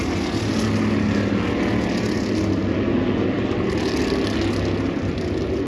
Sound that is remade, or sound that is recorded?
recorded